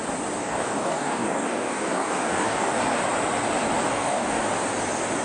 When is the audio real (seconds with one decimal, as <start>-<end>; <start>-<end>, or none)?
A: 0.0-0.4; 2.8-3.8; 4.4-5.2